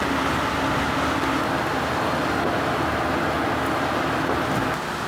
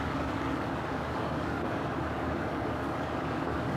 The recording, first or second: first